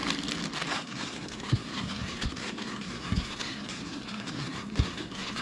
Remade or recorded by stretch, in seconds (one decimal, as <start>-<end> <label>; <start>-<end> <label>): 0.0-0.7 recorded; 0.7-5.4 remade